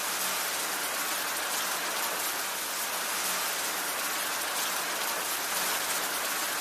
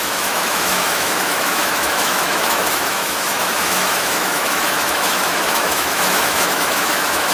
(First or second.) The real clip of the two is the first